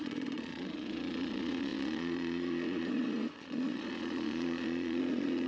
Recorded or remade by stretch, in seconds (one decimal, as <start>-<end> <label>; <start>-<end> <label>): 0.0-5.5 remade